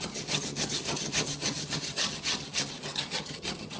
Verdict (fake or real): fake